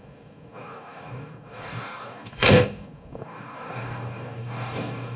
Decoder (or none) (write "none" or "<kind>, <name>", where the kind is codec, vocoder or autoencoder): codec, DAC